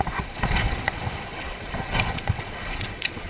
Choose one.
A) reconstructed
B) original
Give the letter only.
A